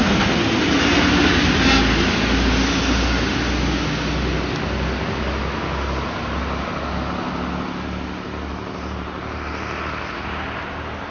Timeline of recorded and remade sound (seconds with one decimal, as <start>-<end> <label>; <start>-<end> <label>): 0.0-8.5 recorded; 8.5-9.5 remade; 9.5-11.1 recorded